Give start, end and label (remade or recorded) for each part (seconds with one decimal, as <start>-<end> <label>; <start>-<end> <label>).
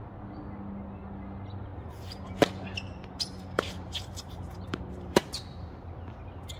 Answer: 0.0-1.7 recorded; 1.7-5.2 remade; 5.2-6.6 recorded